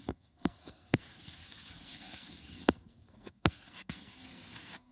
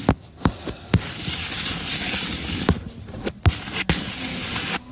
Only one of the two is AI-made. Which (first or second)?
first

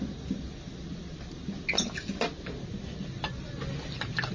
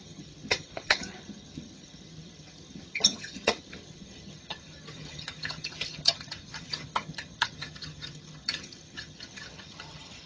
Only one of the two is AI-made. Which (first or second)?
second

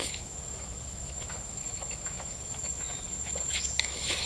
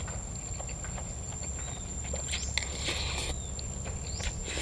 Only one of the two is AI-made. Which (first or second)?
first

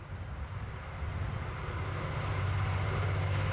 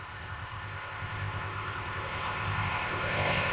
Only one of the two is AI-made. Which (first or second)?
second